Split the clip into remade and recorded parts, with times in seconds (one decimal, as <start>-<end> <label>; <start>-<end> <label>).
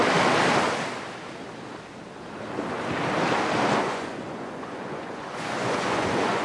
0.0-3.8 recorded; 3.8-6.4 remade